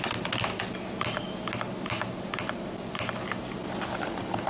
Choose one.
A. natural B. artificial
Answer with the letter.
A